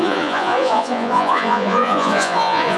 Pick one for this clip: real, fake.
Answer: fake